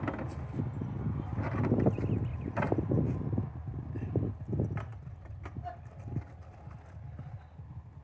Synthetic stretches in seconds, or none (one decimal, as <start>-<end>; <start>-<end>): 2.3-2.9; 4.9-6.9